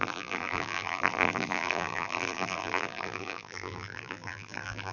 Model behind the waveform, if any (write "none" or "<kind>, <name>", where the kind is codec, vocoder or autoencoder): vocoder, BigVGAN v2